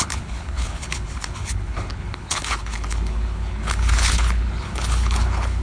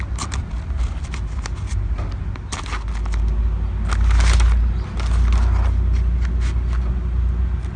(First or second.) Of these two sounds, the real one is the second